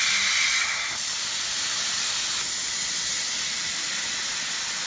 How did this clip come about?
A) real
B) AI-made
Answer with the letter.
A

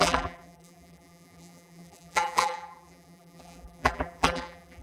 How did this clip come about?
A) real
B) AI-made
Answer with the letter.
B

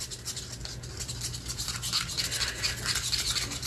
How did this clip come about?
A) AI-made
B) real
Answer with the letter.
B